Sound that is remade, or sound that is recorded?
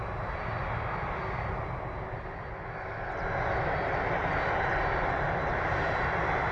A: recorded